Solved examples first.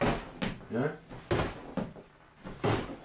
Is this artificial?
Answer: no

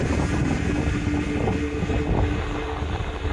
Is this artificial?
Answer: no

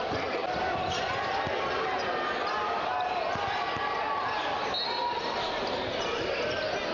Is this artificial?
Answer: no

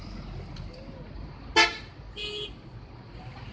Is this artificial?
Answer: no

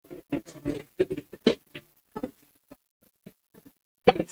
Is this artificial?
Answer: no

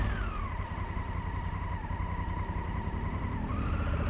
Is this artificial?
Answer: no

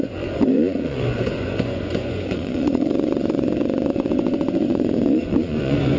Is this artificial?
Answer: yes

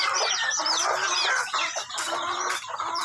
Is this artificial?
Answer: no